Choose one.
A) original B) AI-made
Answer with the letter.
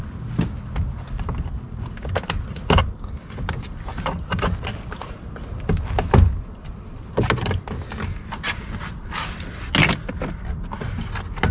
A